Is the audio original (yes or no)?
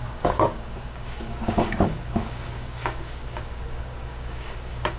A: no